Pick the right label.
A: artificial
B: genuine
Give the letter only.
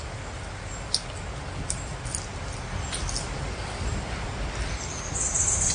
B